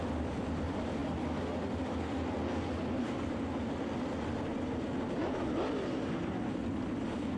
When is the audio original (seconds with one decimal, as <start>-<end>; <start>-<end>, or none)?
1.0-5.1